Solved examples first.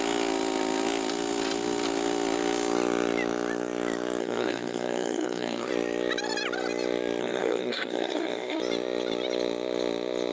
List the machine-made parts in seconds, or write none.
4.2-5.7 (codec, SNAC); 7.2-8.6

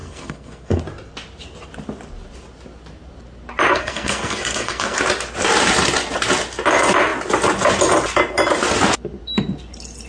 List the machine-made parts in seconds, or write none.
0.0-0.8 (codec, SNAC); 3.7-5.0